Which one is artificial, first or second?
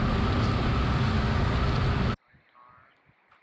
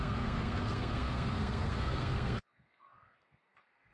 second